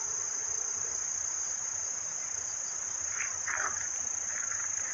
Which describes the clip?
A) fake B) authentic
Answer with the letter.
B